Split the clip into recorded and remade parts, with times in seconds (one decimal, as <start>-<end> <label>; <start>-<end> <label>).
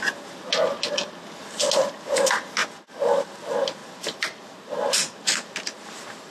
0.0-6.3 recorded